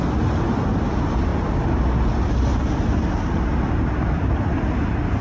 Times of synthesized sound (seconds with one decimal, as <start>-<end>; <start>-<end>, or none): none